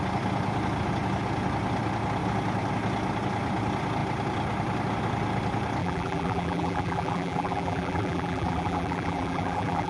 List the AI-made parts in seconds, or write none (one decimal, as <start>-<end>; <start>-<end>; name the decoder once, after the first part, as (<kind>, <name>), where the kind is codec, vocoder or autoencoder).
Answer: 5.8-9.9 (vocoder, BigVGAN v2)